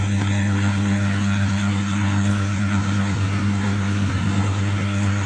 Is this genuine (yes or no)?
no